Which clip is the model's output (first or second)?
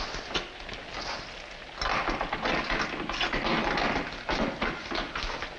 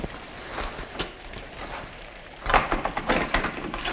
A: second